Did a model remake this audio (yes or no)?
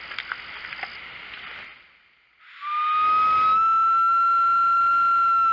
no